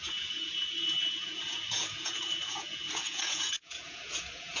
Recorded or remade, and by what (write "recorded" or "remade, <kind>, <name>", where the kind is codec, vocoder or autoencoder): remade, vocoder, Vocos